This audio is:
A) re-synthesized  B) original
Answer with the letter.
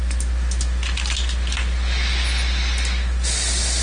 B